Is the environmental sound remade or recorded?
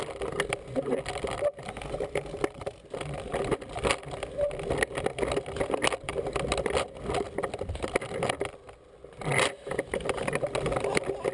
recorded